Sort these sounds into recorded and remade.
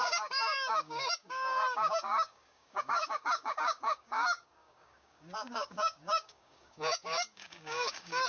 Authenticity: remade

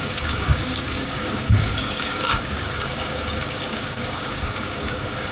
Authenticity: remade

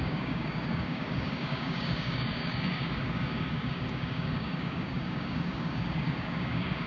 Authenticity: remade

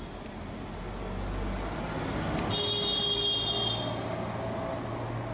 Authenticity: recorded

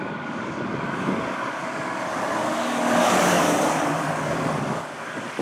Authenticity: remade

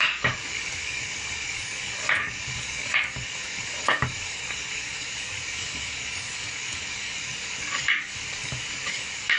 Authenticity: remade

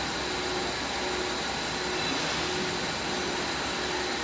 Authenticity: recorded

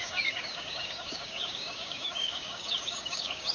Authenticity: remade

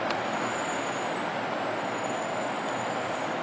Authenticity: recorded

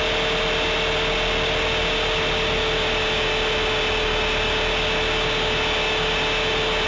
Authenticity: recorded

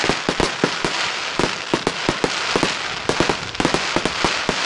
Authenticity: recorded